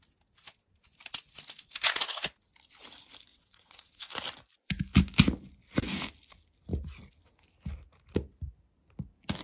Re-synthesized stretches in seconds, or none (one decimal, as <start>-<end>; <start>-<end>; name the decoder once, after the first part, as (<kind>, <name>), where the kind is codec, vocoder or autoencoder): 3.3-4.1 (vocoder, WaveNeXt)